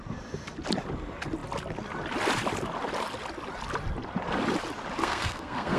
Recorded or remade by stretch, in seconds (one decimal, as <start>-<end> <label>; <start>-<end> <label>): 0.0-5.0 recorded; 5.0-5.8 remade